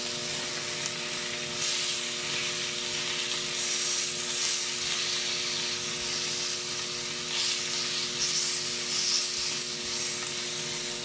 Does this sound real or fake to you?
real